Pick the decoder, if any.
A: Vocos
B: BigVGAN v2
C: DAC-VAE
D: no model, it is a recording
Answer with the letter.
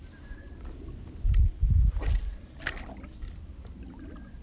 D